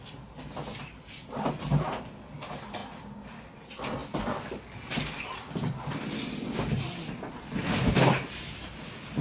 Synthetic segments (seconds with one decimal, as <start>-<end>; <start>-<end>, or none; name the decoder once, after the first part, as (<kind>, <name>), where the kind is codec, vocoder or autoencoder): none